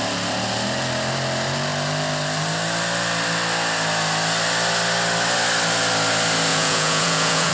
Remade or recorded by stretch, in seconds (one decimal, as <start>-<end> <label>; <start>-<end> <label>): 0.0-6.5 recorded; 6.5-7.5 remade